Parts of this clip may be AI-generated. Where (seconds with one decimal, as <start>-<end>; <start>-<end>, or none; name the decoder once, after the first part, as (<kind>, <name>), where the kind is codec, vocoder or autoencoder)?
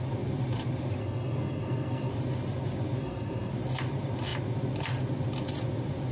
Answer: 1.0-2.1 (codec, SNAC); 3.0-3.5